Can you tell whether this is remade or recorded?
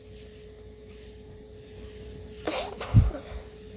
recorded